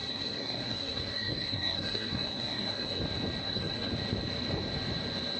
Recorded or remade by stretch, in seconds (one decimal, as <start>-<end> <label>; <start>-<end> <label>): 0.0-3.0 remade; 3.0-3.4 recorded; 3.4-3.9 remade; 3.9-5.4 recorded